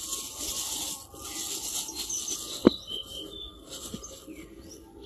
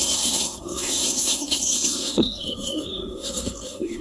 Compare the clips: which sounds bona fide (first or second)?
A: first